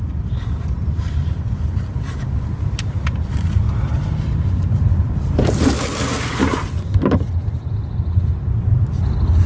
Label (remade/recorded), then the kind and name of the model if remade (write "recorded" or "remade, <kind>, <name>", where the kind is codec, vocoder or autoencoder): recorded